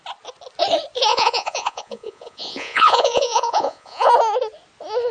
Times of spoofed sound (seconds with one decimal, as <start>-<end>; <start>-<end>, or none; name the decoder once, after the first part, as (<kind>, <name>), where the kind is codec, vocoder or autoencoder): 1.1-4.1 (vocoder, Vocos)